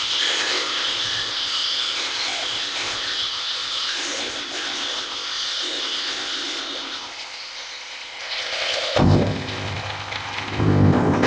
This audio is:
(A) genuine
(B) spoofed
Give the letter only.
B